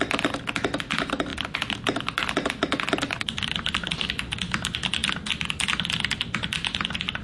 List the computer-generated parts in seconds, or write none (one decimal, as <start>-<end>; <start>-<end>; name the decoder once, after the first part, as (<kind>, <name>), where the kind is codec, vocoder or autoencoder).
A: none